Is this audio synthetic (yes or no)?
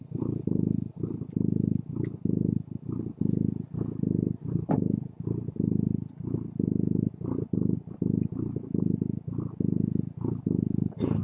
no